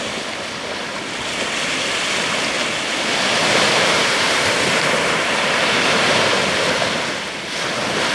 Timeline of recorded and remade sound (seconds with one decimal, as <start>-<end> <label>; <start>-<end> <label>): 0.0-3.4 recorded; 3.4-6.1 remade; 6.1-8.1 recorded